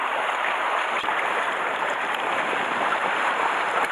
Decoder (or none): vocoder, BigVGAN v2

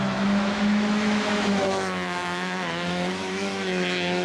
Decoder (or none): autoencoder, DAC-VAE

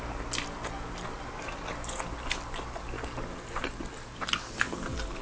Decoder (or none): none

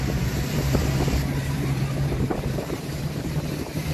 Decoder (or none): vocoder, BigVGAN v2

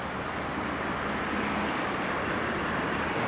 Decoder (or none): none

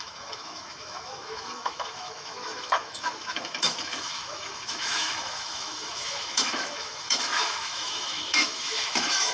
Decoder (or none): autoencoder, DAC-VAE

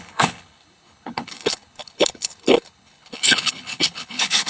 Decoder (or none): codec, HILCodec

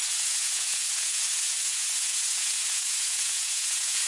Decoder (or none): vocoder, Vocos